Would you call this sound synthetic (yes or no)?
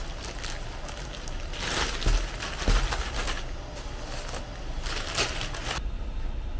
no